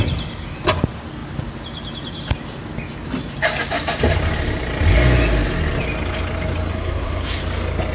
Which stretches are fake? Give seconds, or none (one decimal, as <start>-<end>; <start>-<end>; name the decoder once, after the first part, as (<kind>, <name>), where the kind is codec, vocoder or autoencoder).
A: 6.7-7.4 (codec, SNAC)